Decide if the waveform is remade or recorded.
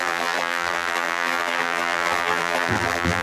remade